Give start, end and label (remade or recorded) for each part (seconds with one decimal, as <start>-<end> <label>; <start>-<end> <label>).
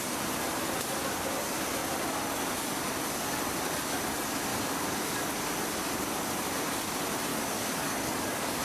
0.0-4.5 recorded; 4.5-5.3 remade; 5.3-7.3 recorded; 7.3-8.6 remade